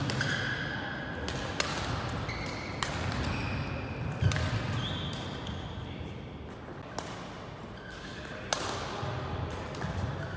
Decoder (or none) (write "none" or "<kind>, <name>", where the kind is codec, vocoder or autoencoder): none